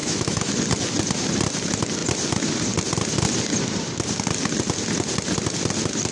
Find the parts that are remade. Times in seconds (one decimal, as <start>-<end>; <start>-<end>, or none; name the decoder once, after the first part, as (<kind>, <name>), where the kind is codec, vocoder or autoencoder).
0.0-0.5 (autoencoder, DAC-VAE)